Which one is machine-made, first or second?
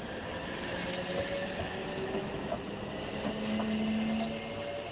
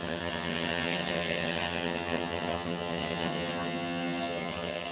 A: second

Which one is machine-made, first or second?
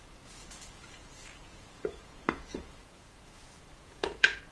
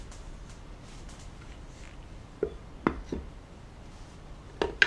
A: first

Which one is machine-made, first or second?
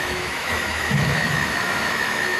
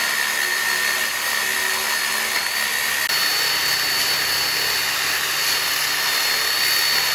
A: first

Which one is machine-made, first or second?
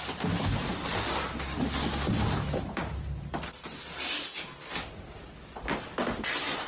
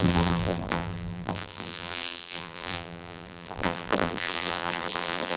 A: second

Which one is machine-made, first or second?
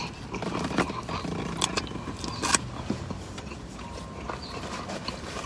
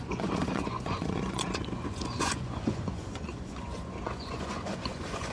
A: second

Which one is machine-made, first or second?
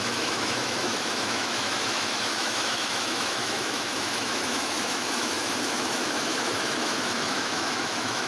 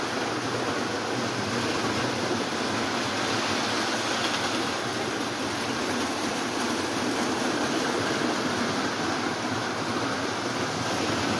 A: first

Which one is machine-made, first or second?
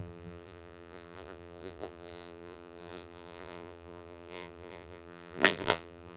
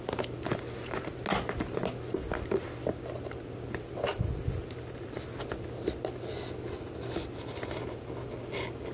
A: first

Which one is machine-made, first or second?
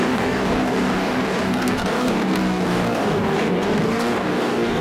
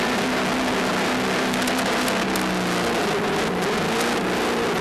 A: first